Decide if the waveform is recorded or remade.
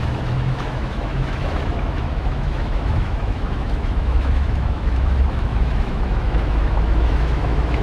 remade